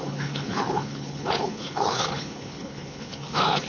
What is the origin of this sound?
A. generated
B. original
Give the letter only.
A